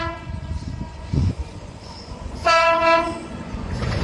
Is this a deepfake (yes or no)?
yes